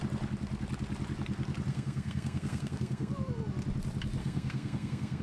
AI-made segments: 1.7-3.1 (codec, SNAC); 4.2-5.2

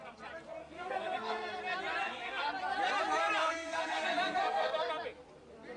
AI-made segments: 0.6-1.6 (codec, SNAC); 2.0-2.5; 3.4-4.9

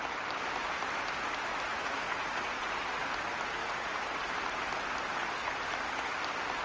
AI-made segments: 1.7-3.1 (vocoder, Vocos); 3.6-4.2

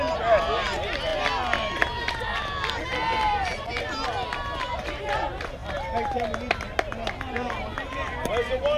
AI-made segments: none

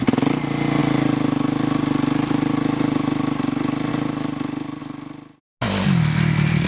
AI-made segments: none

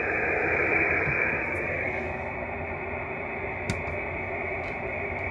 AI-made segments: none